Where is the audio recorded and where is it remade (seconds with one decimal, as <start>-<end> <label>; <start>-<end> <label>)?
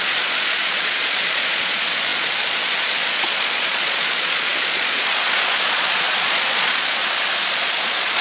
0.0-7.0 remade; 7.0-7.5 recorded; 7.5-8.2 remade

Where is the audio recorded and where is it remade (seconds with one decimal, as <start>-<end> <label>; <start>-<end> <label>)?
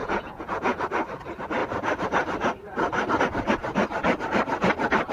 0.0-0.8 remade; 0.8-5.1 recorded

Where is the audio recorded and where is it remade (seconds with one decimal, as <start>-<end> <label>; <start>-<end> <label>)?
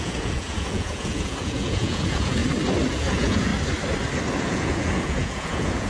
0.0-2.4 remade; 2.4-2.9 recorded; 2.9-3.5 remade; 3.5-4.4 recorded; 4.4-5.9 remade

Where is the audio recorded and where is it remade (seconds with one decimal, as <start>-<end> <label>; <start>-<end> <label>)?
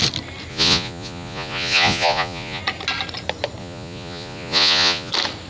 0.0-0.5 recorded; 0.5-2.6 remade; 2.6-3.6 recorded; 3.6-5.1 remade; 5.1-5.5 recorded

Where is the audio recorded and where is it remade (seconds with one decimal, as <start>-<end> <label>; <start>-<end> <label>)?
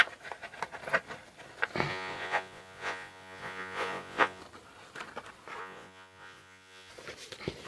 0.0-1.9 recorded; 1.9-4.4 remade; 4.4-5.6 recorded; 5.6-6.9 remade; 6.9-7.7 recorded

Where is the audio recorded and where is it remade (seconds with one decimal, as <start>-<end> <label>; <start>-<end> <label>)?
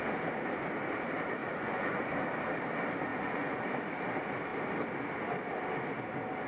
0.0-1.4 recorded; 1.4-2.1 remade; 2.1-3.1 recorded; 3.1-3.6 remade; 3.6-6.5 recorded